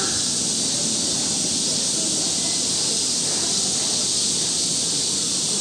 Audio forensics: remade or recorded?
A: recorded